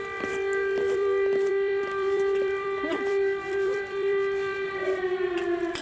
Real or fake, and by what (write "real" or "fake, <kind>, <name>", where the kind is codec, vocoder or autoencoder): fake, vocoder, BigVGAN v2